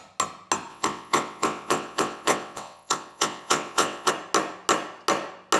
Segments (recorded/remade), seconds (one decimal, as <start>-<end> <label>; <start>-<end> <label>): 0.0-0.7 recorded; 0.7-4.1 remade; 4.1-5.6 recorded